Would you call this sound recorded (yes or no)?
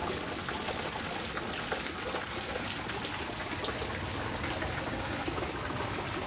yes